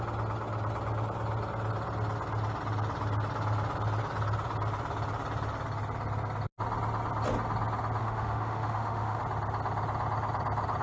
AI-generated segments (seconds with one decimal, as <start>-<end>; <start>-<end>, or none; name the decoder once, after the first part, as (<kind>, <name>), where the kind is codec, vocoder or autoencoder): 8.0-9.2 (autoencoder, DAC-VAE)